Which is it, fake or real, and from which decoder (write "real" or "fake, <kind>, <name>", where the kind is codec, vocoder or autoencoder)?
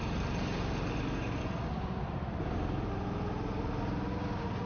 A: real